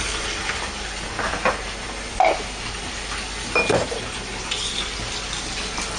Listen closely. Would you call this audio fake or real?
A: real